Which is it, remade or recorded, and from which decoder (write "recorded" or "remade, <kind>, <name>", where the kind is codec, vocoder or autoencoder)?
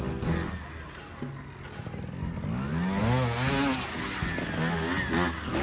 recorded